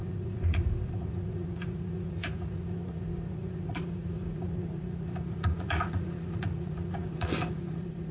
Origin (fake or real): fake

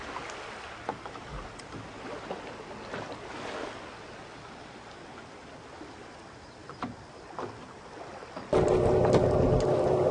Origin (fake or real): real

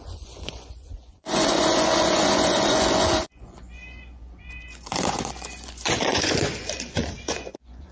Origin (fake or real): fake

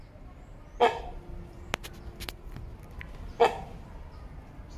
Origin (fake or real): real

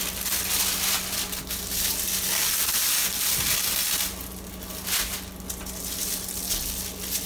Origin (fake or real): real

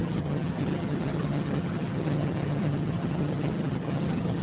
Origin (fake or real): fake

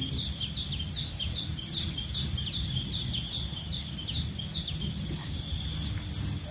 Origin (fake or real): real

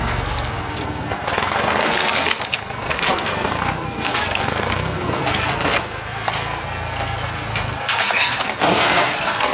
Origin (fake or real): fake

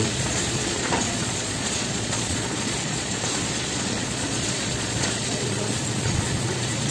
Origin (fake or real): fake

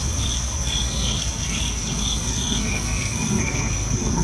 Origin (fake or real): fake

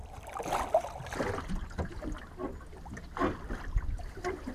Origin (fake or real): real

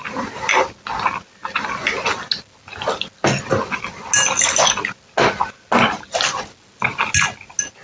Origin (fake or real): real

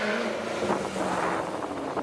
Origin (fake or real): real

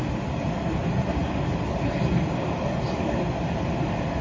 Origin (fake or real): real